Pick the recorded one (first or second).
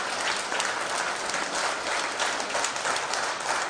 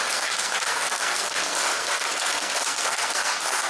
first